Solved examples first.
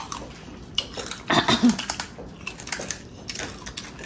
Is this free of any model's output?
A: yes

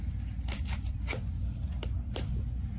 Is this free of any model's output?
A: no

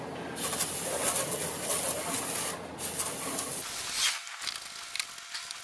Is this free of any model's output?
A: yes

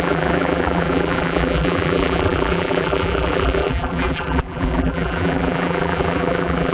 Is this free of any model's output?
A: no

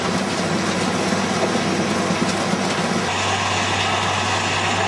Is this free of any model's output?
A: yes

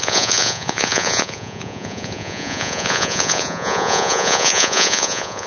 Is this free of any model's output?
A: no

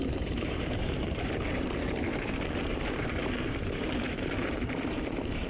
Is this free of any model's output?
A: no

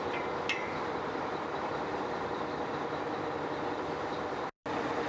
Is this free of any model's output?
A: yes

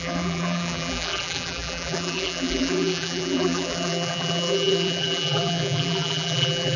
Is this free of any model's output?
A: no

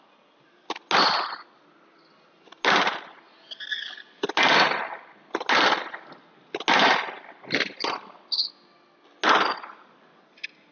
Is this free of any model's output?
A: yes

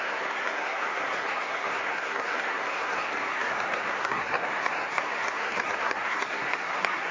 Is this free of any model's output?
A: no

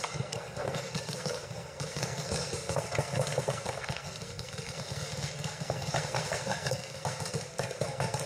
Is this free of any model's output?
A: no